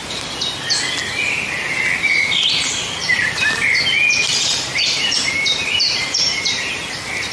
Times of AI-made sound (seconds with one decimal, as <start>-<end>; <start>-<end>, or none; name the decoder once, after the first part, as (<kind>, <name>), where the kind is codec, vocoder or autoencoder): 0.0-0.8 (vocoder, BigVGAN v2); 3.0-3.8; 4.3-6.7